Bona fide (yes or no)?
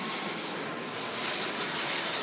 yes